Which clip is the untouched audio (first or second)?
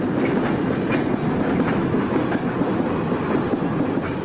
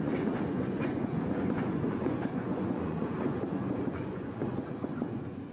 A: first